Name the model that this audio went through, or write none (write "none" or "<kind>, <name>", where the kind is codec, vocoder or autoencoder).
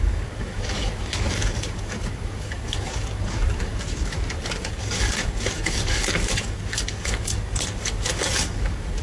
codec, DAC